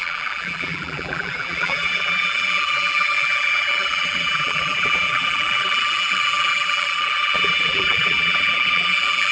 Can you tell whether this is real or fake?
fake